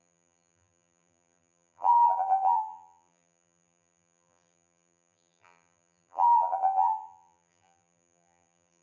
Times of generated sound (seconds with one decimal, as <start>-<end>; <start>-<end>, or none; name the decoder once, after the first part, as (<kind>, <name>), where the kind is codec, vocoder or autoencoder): 0.0-8.8 (vocoder, BigVGAN v2)